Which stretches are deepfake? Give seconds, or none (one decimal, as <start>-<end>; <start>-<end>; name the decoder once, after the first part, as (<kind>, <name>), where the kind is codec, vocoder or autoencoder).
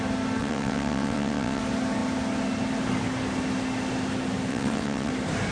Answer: 0.4-1.6 (vocoder, WaveNeXt); 4.5-5.1